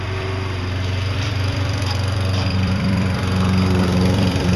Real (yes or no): no